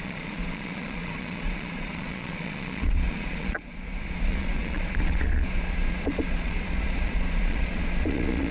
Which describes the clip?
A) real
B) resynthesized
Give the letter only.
B